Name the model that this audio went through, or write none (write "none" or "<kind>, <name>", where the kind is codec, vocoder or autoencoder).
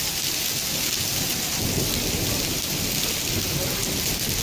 none